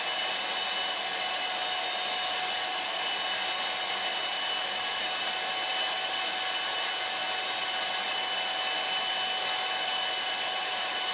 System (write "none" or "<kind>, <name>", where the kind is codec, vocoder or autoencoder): none